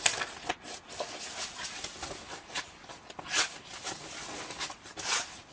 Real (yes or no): yes